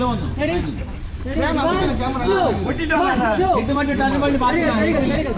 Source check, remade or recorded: remade